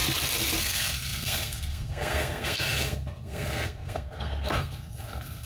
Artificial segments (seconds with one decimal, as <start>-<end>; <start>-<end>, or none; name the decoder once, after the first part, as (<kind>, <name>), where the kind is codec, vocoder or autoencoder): 0.6-5.5 (codec, SNAC)